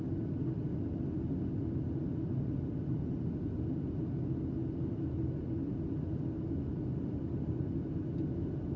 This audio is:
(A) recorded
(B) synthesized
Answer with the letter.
A